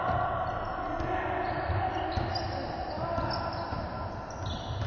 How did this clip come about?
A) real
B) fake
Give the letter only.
A